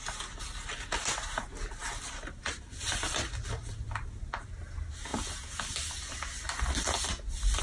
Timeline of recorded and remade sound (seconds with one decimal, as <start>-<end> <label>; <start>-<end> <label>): 0.0-7.6 recorded